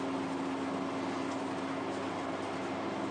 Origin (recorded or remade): recorded